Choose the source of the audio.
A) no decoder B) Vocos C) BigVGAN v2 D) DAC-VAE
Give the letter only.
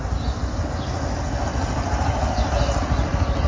A